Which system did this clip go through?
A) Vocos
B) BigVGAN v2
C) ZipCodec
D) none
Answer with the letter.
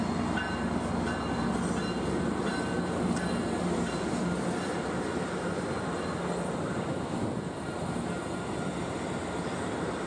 D